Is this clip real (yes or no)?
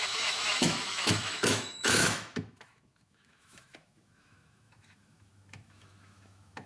no